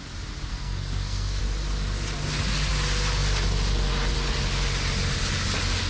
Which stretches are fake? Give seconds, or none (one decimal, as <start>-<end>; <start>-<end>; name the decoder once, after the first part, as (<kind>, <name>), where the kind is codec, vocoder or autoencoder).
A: 0.5-1.4 (codec, SNAC)